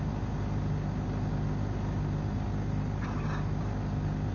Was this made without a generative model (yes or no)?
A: yes